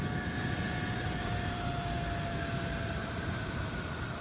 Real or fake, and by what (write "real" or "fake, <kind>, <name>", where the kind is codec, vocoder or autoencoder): real